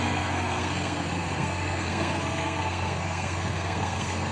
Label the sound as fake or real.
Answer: fake